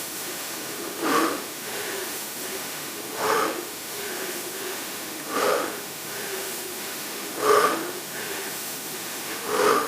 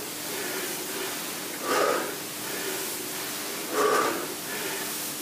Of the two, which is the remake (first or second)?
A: first